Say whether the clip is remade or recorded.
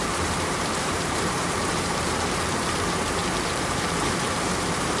remade